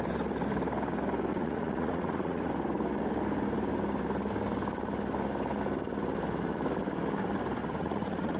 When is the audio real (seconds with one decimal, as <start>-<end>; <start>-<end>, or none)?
0.0-1.3; 2.5-7.6

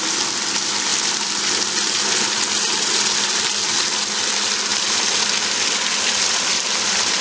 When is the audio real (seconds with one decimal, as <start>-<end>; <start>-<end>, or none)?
0.0-7.2

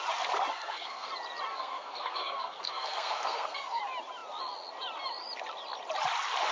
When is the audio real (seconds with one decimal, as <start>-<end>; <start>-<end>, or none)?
0.0-0.5; 1.1-1.5; 3.8-6.5

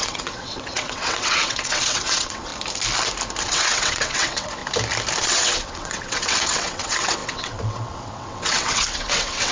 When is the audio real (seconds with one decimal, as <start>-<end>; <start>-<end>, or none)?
2.5-3.4; 4.6-5.2

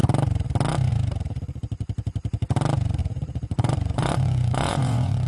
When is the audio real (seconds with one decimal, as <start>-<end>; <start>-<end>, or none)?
0.0-3.0

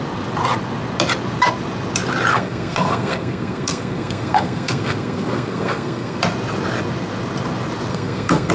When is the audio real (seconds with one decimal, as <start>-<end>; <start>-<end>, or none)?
0.0-2.3; 6.2-7.9